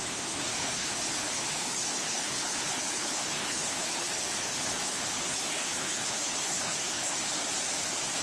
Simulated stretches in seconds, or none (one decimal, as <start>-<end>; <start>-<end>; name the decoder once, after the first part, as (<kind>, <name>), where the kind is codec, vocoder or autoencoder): 0.0-7.4 (codec, HILCodec)